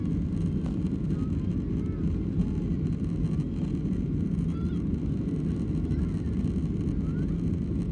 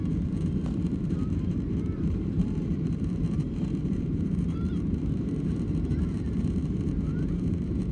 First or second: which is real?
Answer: first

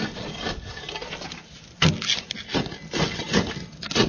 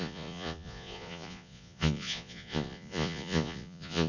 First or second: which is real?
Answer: first